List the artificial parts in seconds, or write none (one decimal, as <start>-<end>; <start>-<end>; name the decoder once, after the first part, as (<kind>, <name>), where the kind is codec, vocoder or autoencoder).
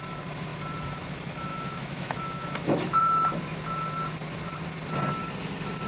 1.5-3.0 (autoencoder, DAC-VAE)